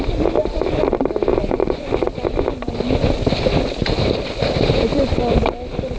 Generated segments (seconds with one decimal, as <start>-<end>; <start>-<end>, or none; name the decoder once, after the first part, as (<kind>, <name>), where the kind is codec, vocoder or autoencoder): 1.3-1.9 (vocoder, Vocos)